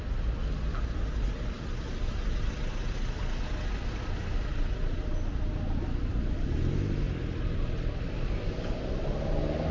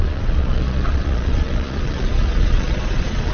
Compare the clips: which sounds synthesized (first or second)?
second